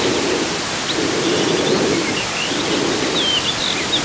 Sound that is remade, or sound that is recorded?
recorded